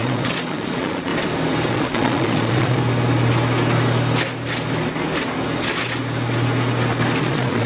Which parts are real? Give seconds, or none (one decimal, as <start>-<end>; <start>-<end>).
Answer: 1.1-1.7; 2.8-7.2